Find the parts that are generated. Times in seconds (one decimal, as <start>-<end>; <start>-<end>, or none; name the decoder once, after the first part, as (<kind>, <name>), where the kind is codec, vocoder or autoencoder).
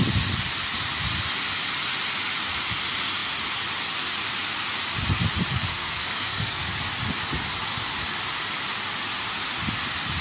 5.7-6.8 (codec, SNAC)